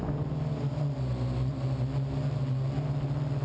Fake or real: real